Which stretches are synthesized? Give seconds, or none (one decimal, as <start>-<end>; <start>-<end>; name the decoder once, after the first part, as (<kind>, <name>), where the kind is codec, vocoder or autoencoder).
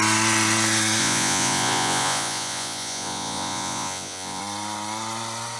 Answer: 1.0-4.4 (vocoder, Vocos)